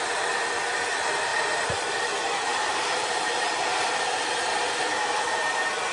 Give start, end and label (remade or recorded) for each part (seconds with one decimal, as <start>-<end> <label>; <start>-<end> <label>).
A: 0.0-1.3 recorded; 1.3-2.1 remade; 2.1-2.5 recorded; 2.5-3.7 remade; 3.7-5.9 recorded

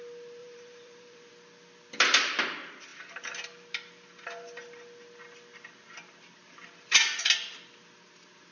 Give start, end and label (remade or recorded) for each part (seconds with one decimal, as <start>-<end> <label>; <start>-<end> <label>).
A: 0.0-0.4 recorded; 0.4-1.3 remade; 1.3-8.5 recorded

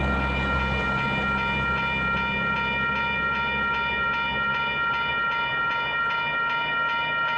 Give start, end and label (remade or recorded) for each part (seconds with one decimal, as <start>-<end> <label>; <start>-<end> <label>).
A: 0.0-7.4 recorded

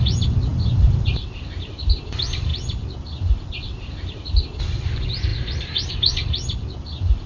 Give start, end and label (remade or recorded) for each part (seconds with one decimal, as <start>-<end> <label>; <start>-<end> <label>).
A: 0.0-5.3 recorded; 5.3-5.9 remade; 5.9-7.3 recorded

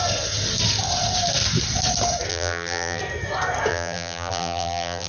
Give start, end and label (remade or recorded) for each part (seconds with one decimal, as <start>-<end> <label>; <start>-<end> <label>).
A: 0.0-2.3 recorded; 2.3-3.0 remade; 3.0-3.7 recorded; 3.7-5.1 remade

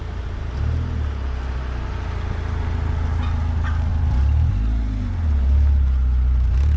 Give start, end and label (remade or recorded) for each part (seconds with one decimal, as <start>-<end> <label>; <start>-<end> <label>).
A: 0.0-3.9 recorded; 3.9-4.5 remade; 4.5-6.8 recorded

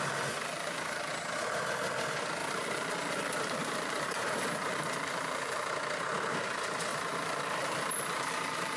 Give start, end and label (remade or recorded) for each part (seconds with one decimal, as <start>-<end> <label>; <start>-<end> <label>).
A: 0.0-0.4 recorded; 0.4-1.1 remade; 1.1-2.4 recorded; 2.4-5.7 remade; 5.7-6.9 recorded; 6.9-8.8 remade

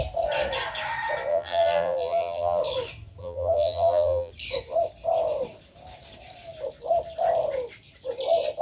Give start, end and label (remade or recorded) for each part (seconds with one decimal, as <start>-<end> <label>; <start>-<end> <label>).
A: 0.0-1.3 recorded; 1.3-2.6 remade; 2.6-3.2 recorded; 3.2-4.3 remade; 4.3-8.6 recorded